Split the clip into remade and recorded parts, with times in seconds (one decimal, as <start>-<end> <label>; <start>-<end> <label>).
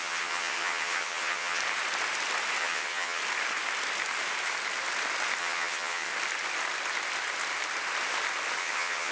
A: 0.0-1.6 remade; 1.6-2.6 recorded; 2.6-3.2 remade; 3.2-5.4 recorded; 5.4-6.1 remade; 6.1-8.6 recorded; 8.6-9.1 remade